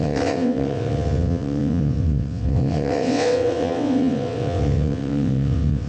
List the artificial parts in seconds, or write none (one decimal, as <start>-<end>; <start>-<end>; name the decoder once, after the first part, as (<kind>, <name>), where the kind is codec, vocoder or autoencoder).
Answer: 0.0-5.9 (vocoder, WaveNeXt)